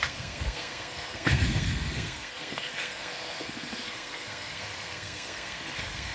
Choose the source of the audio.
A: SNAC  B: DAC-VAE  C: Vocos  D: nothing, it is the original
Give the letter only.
A